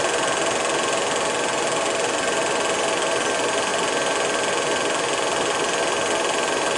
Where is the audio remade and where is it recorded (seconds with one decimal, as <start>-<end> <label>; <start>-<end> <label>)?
0.0-6.8 recorded